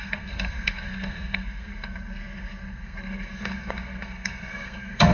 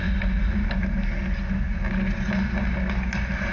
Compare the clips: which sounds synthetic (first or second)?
first